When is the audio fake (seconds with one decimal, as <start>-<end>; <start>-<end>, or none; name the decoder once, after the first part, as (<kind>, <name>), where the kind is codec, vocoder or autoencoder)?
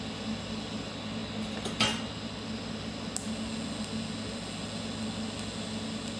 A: none